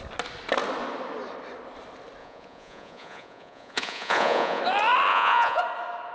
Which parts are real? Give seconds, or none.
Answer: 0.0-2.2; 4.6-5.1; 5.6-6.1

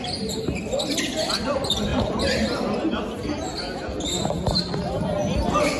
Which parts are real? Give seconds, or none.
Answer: 1.9-4.6; 5.2-5.8

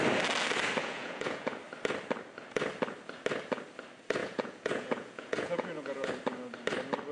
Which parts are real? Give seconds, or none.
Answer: 0.0-0.8; 1.6-4.2; 6.1-7.1

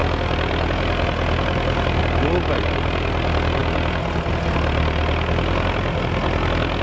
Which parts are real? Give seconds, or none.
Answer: 0.0-6.8

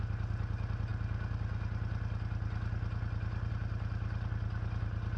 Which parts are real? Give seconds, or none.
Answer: 0.0-5.2